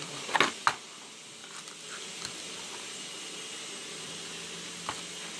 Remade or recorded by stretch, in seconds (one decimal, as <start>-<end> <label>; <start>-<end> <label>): 0.0-5.4 recorded

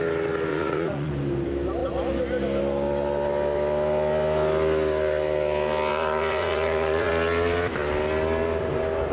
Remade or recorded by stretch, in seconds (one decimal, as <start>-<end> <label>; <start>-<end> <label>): 0.0-0.5 recorded; 0.5-1.1 remade; 1.1-5.9 recorded; 5.9-7.1 remade; 7.1-9.1 recorded

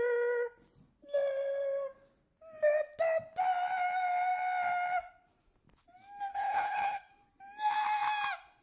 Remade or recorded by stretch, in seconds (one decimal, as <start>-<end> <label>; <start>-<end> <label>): 0.0-6.3 recorded; 6.3-7.1 remade; 7.1-8.6 recorded

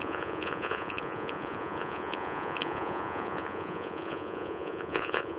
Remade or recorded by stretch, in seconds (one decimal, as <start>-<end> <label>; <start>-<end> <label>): 0.0-5.4 remade

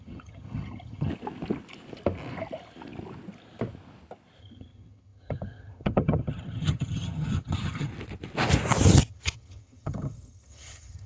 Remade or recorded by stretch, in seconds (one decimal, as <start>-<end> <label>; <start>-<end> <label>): 0.0-1.1 remade; 1.1-4.4 recorded; 4.4-7.9 remade; 7.9-9.0 recorded; 9.0-11.1 remade

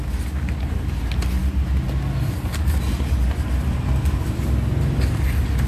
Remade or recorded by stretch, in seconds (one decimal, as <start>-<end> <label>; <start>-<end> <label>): 0.0-5.7 recorded

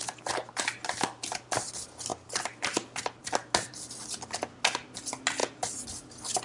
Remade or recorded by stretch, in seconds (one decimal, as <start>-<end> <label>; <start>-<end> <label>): 0.0-6.4 recorded

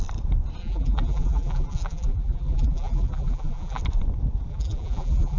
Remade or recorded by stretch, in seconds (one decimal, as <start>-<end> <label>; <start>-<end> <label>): 0.0-0.6 recorded; 0.6-3.8 remade; 3.8-4.5 recorded; 4.5-5.4 remade